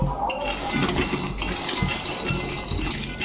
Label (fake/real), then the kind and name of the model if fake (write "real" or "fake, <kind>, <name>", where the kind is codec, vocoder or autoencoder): real